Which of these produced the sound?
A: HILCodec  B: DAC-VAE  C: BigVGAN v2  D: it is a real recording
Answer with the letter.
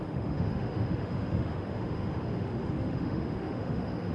B